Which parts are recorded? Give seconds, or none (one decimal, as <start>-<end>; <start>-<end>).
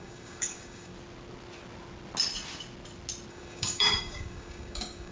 0.9-3.3